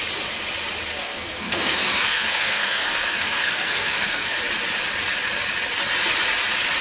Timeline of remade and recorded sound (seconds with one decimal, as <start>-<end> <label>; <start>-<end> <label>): 0.0-0.9 recorded; 0.9-4.4 remade; 4.4-6.8 recorded